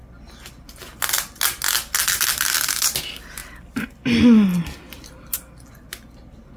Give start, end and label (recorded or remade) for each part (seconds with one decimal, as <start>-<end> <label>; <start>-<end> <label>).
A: 0.0-6.6 recorded